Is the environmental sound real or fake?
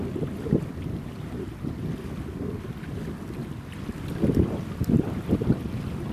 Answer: real